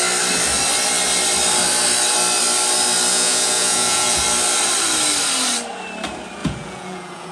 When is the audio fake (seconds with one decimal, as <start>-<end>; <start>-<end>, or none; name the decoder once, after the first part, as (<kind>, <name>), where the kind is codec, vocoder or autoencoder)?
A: 3.1-4.2 (vocoder, Vocos); 6.4-7.3